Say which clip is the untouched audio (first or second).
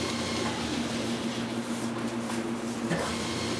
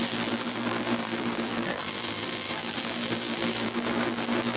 first